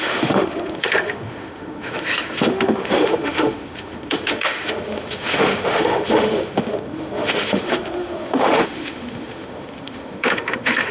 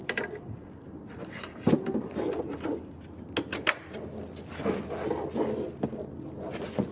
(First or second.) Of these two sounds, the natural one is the second